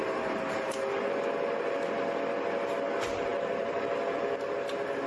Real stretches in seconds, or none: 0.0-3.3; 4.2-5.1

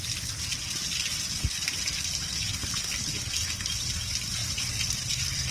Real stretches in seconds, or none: 0.0-5.5

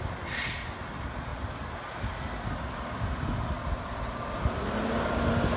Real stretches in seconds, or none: 0.0-5.6